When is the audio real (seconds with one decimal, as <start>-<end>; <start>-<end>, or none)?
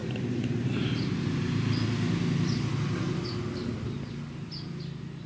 1.5-5.3